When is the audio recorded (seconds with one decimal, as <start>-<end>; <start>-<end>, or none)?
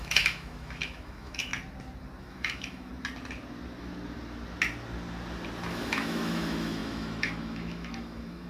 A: 1.5-2.2; 2.9-5.7